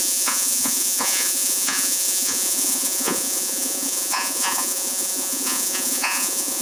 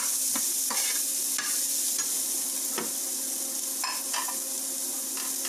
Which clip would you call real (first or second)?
second